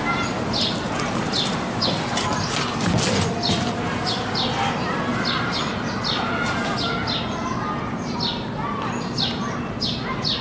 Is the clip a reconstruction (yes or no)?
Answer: no